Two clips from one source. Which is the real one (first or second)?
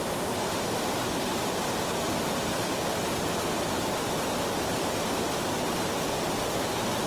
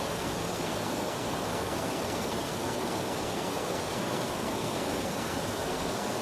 first